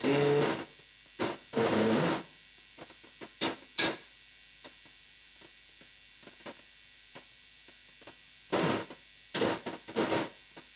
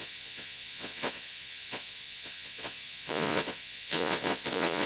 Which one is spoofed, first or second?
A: second